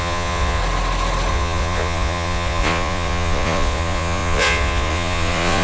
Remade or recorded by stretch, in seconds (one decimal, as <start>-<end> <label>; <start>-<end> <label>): 0.0-0.6 remade; 0.6-1.3 recorded; 1.3-5.6 remade